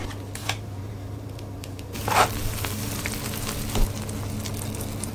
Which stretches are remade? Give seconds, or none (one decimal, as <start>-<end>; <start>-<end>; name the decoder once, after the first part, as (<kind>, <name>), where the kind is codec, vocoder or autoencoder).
0.4-3.1 (vocoder, BigVGAN v2)